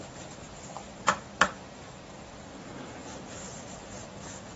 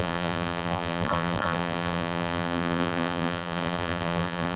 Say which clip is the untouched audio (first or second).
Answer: first